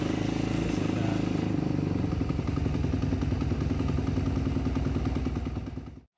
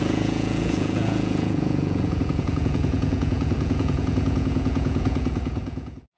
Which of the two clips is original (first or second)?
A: first